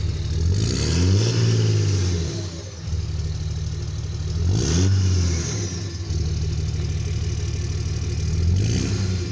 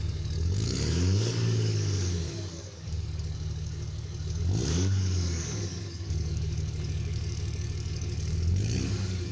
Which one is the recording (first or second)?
first